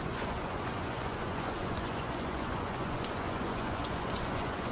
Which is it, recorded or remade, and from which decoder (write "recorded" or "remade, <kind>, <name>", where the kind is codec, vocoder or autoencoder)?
remade, vocoder, Vocos